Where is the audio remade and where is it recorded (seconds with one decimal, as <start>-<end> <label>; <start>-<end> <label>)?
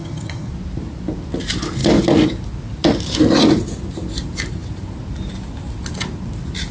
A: 0.0-0.5 remade; 0.5-6.7 recorded